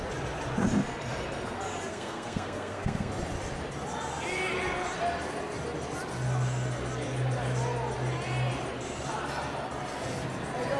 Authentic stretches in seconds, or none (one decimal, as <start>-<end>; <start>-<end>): 0.0-1.9; 3.1-10.8